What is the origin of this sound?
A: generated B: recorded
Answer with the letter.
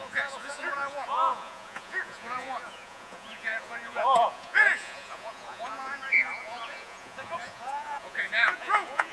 A